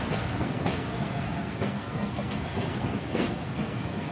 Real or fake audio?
fake